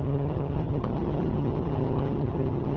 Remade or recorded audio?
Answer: remade